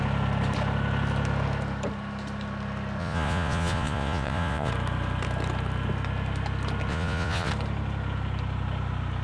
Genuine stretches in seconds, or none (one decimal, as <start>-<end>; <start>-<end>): 0.0-3.0; 4.7-6.9; 7.5-9.2